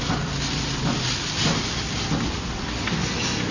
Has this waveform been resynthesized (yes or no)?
no